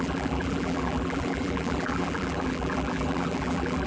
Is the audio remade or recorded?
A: remade